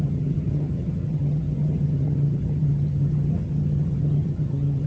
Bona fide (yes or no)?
no